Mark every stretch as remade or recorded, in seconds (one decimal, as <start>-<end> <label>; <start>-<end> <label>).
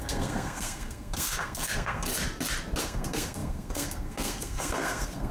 0.0-2.1 remade; 2.1-2.8 recorded; 2.8-5.3 remade